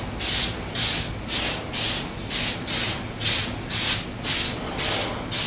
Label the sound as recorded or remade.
recorded